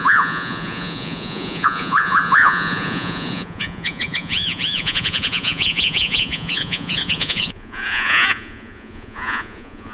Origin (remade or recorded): remade